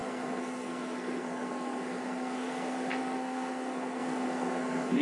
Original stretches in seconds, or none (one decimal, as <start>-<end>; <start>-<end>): none